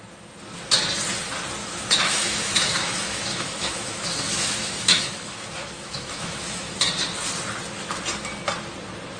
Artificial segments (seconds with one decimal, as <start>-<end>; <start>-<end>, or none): 1.6-6.7